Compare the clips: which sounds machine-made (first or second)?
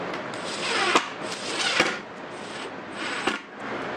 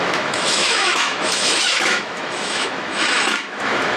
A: second